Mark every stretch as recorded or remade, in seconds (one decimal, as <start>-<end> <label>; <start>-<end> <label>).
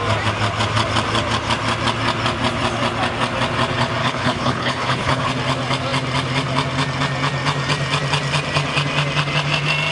0.0-4.0 recorded; 4.0-5.3 remade; 5.3-9.9 recorded